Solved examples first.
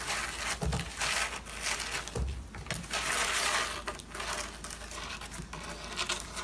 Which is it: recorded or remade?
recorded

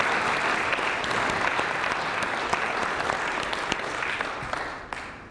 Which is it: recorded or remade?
remade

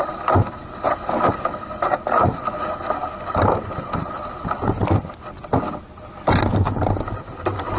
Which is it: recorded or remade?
recorded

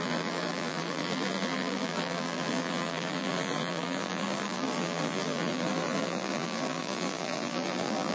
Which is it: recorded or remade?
remade